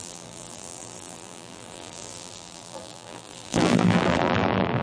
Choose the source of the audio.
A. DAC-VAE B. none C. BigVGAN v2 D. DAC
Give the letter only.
C